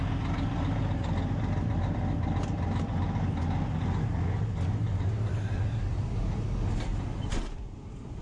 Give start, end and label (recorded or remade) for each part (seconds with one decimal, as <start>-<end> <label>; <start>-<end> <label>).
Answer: 0.0-6.9 recorded; 6.9-8.2 remade